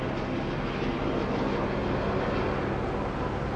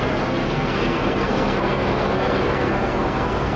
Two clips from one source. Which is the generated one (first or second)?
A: second